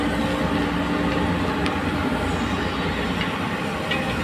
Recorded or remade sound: recorded